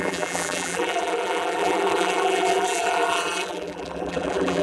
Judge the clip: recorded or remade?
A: remade